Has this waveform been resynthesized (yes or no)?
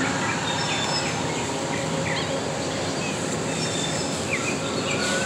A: no